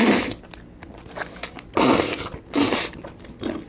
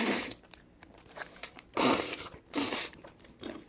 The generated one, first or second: second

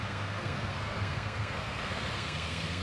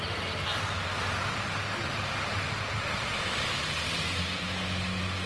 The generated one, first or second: first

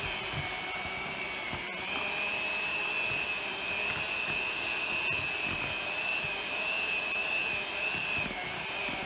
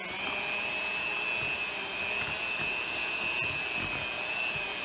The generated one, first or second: first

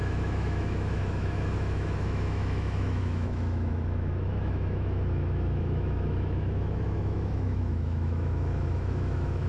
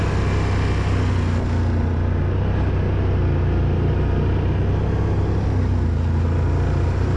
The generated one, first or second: first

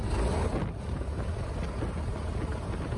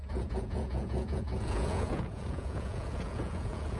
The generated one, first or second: second